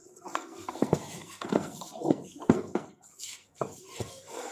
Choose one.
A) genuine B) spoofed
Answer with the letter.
B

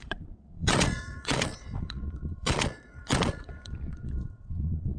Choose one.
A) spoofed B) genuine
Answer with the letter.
A